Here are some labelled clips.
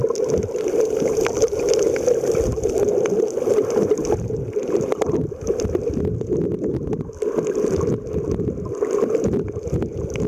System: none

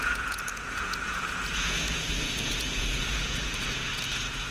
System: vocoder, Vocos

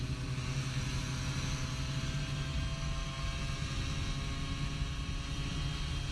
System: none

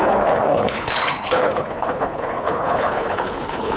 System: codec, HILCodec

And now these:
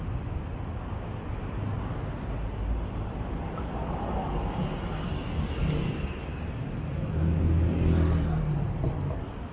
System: none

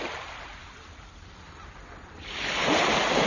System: none